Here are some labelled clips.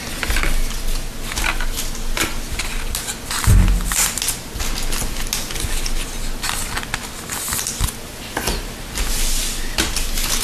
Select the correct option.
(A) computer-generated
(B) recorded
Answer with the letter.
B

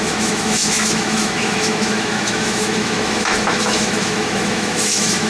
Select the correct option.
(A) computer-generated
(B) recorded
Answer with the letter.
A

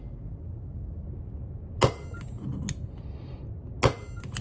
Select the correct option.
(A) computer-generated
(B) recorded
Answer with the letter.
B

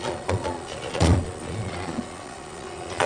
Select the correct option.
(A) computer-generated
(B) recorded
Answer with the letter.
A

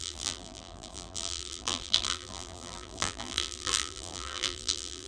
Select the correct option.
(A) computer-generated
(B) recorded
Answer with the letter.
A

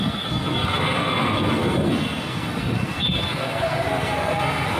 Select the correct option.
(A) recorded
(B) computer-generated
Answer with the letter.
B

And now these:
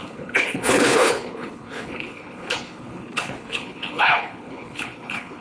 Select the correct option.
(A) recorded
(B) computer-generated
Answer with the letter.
B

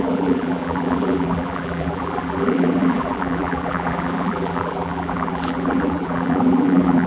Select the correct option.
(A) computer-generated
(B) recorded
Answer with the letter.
A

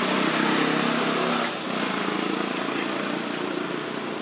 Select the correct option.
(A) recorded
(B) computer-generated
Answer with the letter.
A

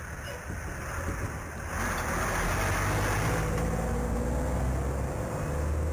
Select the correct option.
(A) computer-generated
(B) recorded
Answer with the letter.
B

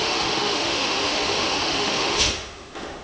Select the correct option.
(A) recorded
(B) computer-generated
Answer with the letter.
B